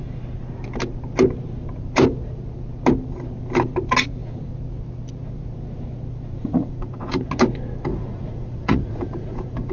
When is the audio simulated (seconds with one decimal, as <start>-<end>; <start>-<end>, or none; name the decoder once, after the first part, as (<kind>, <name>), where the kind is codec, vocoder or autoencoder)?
6.4-7.2 (vocoder, Vocos); 7.9-9.7